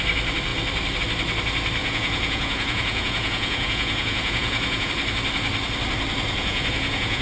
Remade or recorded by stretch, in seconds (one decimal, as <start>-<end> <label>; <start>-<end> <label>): 0.0-1.8 recorded; 1.8-4.9 remade; 4.9-6.4 recorded; 6.4-7.2 remade